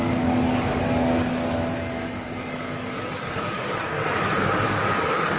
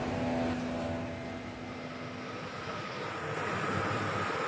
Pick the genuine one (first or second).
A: second